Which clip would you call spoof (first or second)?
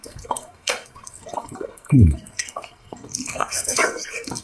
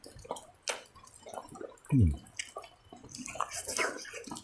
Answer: first